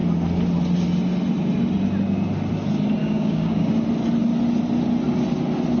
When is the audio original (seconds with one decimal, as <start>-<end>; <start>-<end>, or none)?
0.0-3.0; 3.7-5.8